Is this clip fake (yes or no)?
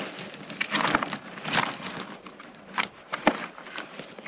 no